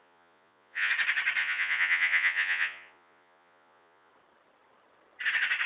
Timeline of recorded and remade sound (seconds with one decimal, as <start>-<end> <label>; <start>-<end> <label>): 0.0-0.9 remade; 0.9-1.4 recorded; 1.4-4.1 remade; 4.1-5.7 recorded

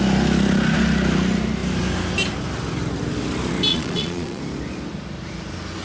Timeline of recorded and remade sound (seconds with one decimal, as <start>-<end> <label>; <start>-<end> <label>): 0.0-3.7 recorded; 3.7-4.4 remade; 4.4-5.8 recorded